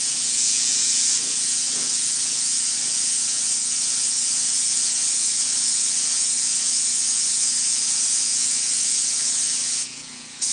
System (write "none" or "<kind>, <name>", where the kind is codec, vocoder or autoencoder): vocoder, Vocos